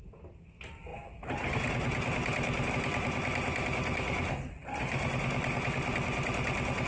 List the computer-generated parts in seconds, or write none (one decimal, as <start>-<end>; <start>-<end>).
none